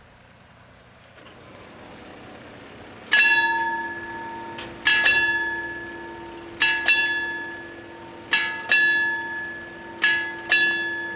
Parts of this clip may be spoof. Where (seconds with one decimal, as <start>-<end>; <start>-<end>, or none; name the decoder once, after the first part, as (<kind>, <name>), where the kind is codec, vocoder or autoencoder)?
none